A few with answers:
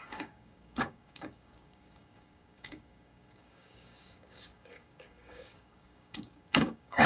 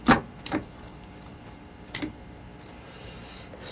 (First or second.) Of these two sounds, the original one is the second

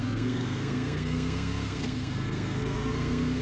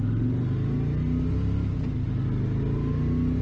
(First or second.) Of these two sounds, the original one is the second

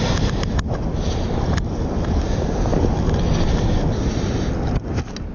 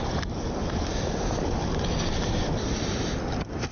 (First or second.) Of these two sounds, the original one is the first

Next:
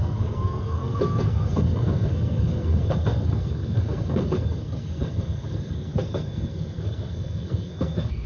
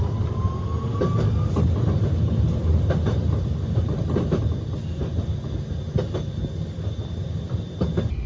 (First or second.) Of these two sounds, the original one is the second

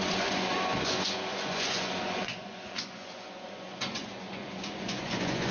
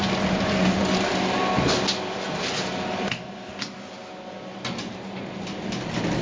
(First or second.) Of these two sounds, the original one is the second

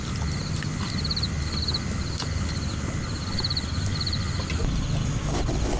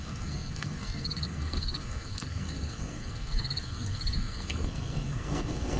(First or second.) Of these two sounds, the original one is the first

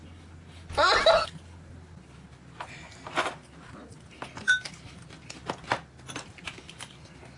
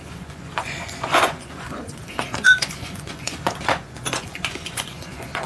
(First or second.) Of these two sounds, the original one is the first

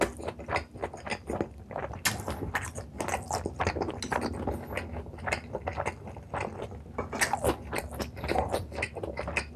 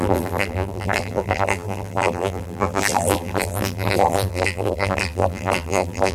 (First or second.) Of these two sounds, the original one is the first